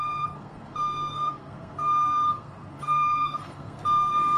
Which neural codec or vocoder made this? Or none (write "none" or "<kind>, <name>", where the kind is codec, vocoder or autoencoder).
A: codec, SNAC